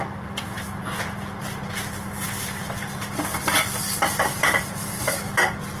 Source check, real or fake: real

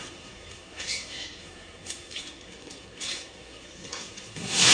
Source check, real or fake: fake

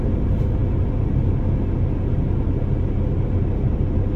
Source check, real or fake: real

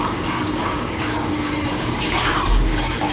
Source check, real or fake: fake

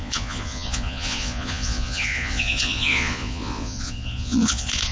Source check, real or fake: fake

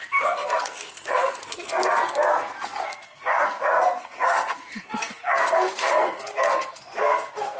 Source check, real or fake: fake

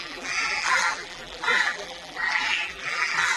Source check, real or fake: fake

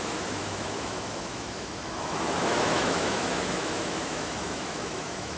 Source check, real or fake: fake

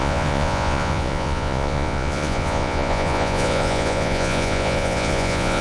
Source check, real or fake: fake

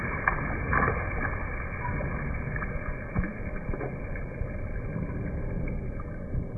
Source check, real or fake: real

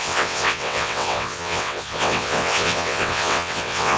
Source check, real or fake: fake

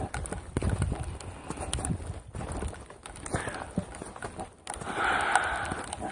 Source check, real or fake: real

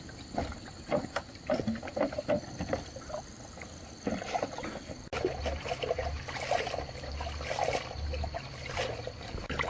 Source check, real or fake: real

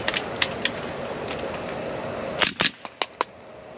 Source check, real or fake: real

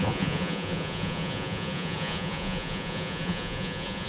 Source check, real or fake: fake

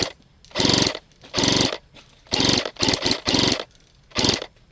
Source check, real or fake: real